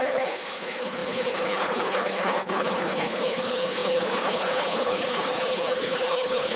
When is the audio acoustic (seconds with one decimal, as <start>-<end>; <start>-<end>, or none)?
none